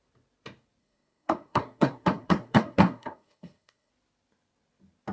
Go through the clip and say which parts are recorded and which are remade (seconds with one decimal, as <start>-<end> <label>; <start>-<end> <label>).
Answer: 0.0-0.8 recorded; 0.8-3.9 remade; 3.9-5.1 recorded